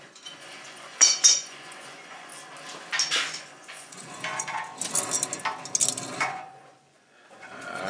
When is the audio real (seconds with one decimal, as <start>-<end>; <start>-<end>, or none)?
2.3-3.4; 4.7-6.2

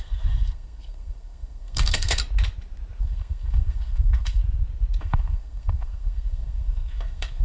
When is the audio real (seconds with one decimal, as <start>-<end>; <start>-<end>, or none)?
2.2-3.0; 4.4-5.0

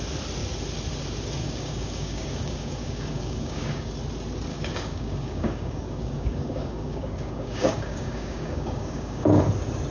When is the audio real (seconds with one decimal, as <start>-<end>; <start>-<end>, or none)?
0.0-1.4; 3.9-4.5; 9.4-9.9

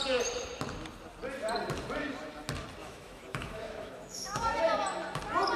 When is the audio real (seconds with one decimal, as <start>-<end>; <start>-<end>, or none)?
0.0-2.8; 4.6-5.6